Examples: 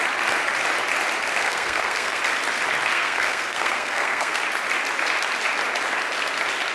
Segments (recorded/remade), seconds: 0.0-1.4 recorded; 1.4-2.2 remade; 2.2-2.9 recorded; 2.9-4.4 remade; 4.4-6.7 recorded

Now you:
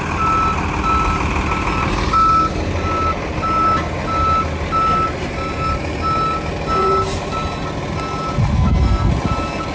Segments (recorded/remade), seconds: 0.0-8.5 recorded; 8.5-9.1 remade; 9.1-9.7 recorded